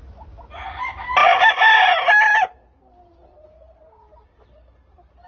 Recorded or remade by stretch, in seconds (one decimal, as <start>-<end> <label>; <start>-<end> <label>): 0.0-5.3 recorded